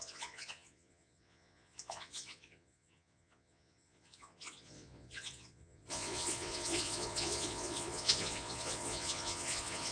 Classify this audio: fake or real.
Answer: fake